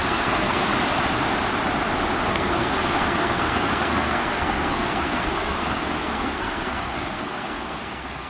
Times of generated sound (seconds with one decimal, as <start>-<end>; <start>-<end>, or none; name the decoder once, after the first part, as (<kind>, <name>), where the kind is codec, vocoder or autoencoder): 0.0-0.7 (codec, SNAC); 2.3-8.3